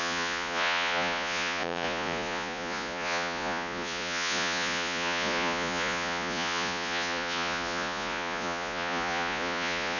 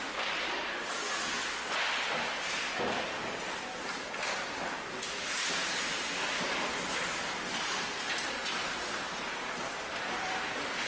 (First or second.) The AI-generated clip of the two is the first